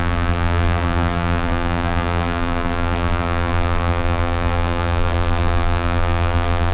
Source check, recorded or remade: remade